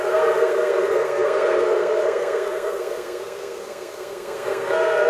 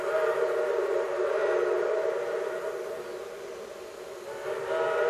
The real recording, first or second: second